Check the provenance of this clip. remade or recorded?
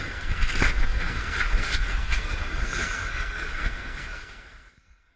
remade